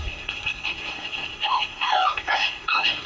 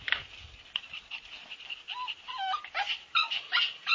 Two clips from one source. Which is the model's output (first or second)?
first